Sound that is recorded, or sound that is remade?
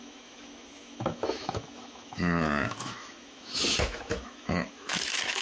remade